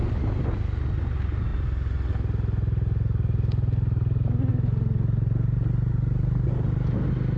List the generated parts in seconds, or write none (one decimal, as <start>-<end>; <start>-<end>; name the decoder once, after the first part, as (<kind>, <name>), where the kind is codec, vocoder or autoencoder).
none